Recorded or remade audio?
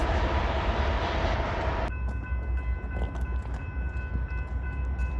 recorded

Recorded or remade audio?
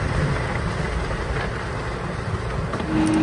recorded